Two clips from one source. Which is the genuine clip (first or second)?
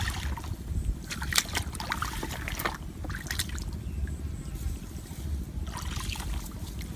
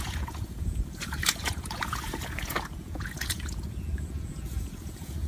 first